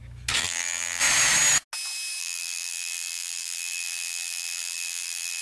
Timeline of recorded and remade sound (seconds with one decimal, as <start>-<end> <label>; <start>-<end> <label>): 0.0-0.4 recorded; 0.4-1.0 remade; 1.0-2.2 recorded; 2.2-5.4 remade